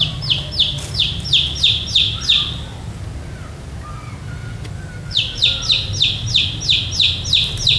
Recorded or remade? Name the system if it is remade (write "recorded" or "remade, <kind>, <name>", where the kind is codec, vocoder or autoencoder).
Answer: recorded